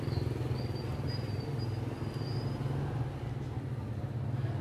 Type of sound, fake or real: real